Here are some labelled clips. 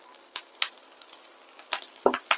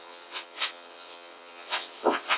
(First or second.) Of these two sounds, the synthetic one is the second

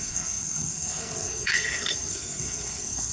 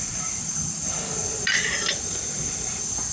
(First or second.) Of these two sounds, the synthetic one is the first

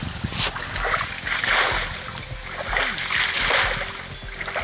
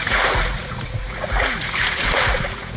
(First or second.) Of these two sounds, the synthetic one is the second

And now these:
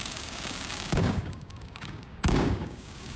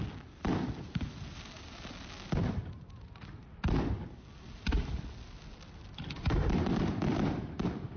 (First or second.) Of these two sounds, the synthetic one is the first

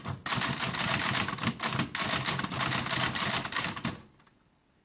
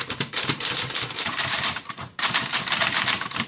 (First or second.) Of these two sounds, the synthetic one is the second